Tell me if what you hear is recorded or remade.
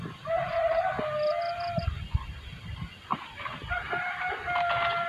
recorded